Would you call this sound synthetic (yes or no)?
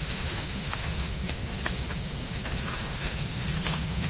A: yes